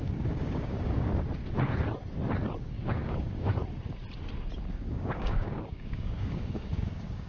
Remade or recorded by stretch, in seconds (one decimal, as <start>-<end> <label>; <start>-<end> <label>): 0.0-1.1 remade; 1.1-2.6 recorded; 2.6-3.6 remade; 3.6-4.7 recorded; 4.7-7.3 remade